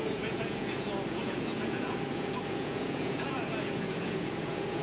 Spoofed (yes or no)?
yes